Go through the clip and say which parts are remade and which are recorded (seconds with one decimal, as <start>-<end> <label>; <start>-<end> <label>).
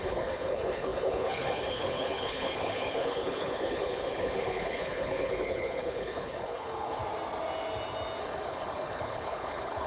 0.0-7.0 remade; 7.0-8.2 recorded; 8.2-9.9 remade